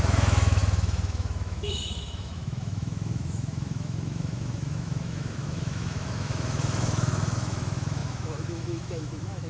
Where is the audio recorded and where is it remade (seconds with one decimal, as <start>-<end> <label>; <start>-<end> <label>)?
0.0-9.5 remade